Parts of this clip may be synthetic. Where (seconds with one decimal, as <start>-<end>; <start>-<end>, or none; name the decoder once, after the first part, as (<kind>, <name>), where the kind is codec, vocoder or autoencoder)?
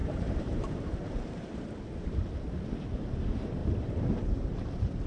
0.0-1.8 (vocoder, BigVGAN v2); 3.6-5.1